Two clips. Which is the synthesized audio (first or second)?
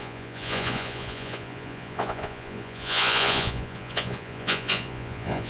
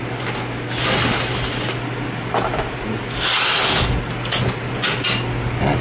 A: first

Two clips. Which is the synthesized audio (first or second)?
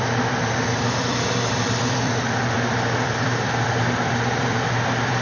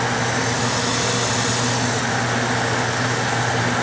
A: first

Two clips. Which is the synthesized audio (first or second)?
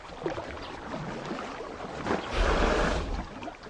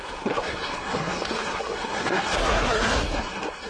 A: second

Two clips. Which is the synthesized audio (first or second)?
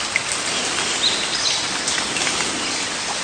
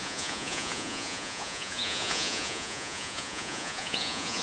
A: second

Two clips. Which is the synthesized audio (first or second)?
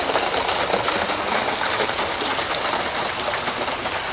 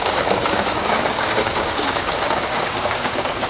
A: second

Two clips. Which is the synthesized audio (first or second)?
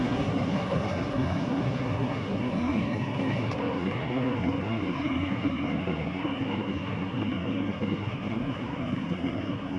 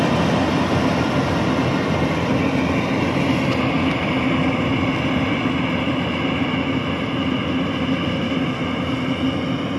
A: first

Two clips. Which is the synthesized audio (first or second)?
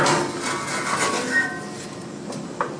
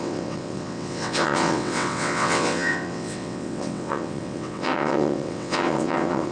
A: second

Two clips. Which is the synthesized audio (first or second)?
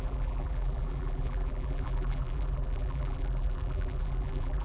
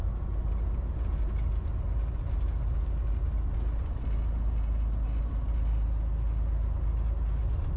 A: first